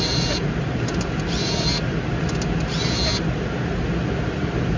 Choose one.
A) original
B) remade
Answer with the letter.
A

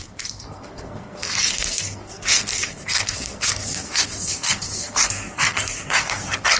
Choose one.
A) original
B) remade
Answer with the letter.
B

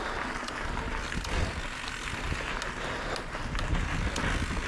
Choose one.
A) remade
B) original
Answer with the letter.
B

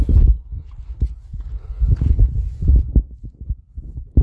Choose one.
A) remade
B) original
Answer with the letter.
B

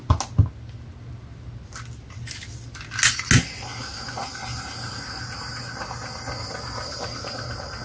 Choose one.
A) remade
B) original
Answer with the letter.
B